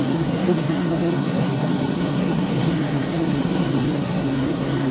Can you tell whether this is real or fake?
fake